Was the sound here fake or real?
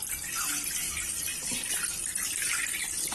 real